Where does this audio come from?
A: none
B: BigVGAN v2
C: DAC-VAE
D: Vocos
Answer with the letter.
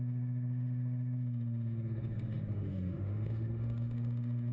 C